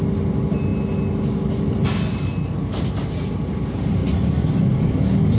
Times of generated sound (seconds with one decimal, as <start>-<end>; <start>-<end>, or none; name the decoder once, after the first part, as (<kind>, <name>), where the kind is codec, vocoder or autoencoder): none